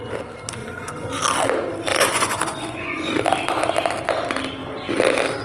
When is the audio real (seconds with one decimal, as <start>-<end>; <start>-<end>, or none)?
0.0-0.6; 1.1-1.9; 3.2-5.4